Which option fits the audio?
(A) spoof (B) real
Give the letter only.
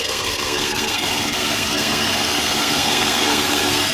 A